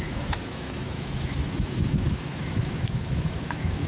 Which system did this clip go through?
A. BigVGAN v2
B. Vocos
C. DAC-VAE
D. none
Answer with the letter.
C